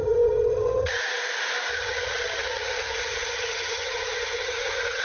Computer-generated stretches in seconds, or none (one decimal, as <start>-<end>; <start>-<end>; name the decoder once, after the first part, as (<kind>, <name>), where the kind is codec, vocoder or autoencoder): 0.0-1.0 (vocoder, HiFi-GAN); 1.7-5.0